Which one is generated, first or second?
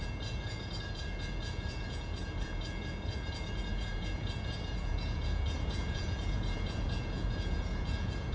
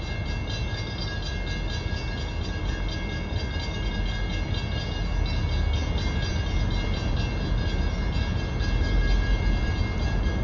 first